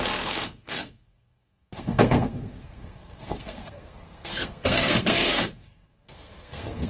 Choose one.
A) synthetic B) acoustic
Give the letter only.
A